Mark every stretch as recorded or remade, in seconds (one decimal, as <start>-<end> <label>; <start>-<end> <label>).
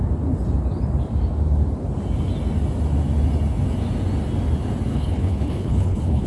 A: 0.0-4.9 recorded; 4.9-6.3 remade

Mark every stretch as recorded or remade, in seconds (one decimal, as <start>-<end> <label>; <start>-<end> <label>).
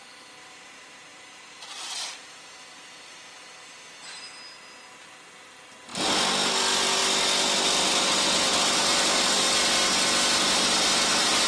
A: 0.0-1.1 recorded; 1.1-3.3 remade; 3.3-11.5 recorded